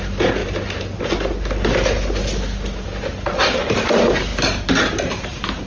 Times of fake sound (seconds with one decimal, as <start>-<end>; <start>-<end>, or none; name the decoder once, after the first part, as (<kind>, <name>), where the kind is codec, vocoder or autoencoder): none